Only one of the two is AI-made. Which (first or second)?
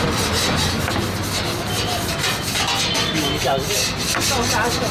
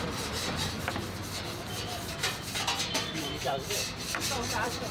second